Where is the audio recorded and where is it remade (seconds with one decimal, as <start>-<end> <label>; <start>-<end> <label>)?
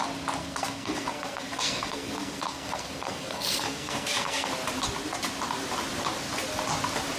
0.0-0.4 recorded; 0.4-4.5 remade; 4.5-7.2 recorded